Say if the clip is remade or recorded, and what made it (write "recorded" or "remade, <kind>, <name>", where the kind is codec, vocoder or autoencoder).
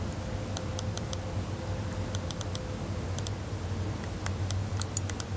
recorded